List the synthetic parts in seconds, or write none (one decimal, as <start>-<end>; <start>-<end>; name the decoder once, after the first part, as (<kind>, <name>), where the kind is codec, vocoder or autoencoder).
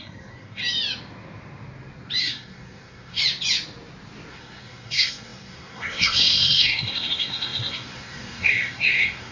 0.0-0.6 (codec, SNAC); 2.2-3.2; 4.3-9.3